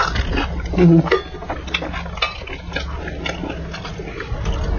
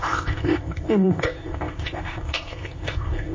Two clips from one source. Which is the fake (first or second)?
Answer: second